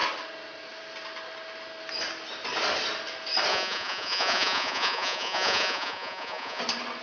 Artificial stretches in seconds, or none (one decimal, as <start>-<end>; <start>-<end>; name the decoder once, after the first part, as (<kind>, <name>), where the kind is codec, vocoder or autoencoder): 3.5-6.6 (vocoder, Vocos)